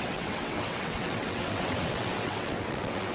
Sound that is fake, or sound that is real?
fake